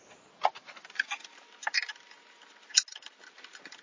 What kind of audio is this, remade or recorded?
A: recorded